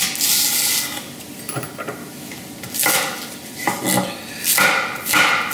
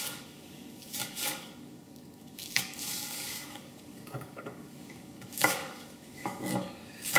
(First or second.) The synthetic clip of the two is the second